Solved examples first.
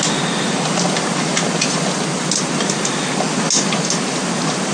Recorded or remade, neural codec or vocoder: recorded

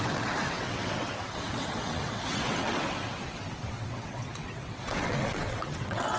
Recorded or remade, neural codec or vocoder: remade, vocoder, WaveNeXt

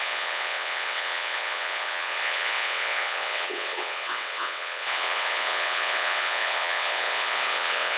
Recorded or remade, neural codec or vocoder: remade, vocoder, WaveNeXt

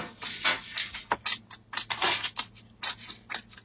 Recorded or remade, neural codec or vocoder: recorded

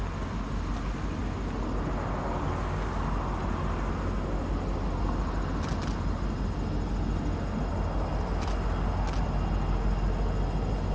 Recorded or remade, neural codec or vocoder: recorded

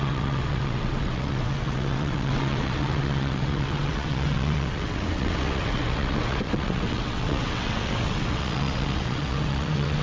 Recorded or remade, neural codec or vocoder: remade, vocoder, WaveNeXt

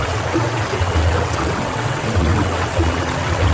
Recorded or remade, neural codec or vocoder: remade, vocoder, WaveNeXt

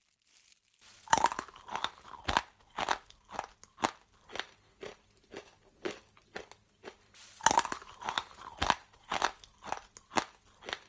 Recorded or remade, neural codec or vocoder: recorded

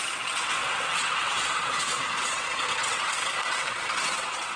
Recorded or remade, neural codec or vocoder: remade, vocoder, WaveNeXt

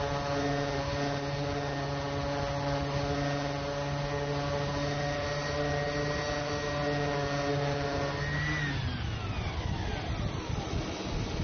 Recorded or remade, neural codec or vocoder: recorded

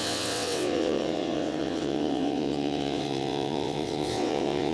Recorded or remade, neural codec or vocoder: remade, vocoder, WaveNeXt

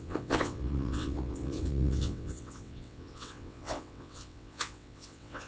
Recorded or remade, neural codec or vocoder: remade, vocoder, WaveNeXt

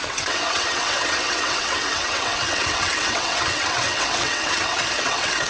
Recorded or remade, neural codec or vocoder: remade, vocoder, WaveNeXt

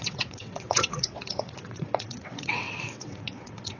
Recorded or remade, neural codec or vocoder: remade, vocoder, WaveNeXt